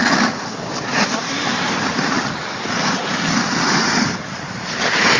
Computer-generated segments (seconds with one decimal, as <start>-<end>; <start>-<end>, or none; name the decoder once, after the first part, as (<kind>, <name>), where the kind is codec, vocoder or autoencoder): none